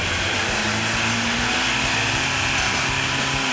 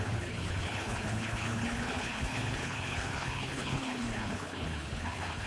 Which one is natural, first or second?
first